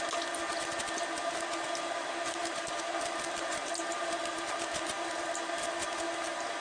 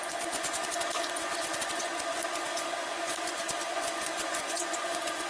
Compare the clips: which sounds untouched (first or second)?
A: first